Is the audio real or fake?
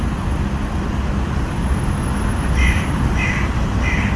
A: real